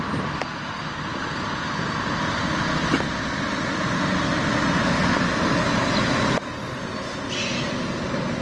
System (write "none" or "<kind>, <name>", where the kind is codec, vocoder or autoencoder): none